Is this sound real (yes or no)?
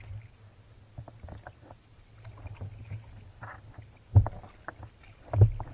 yes